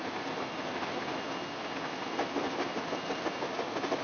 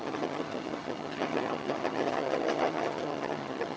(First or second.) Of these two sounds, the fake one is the second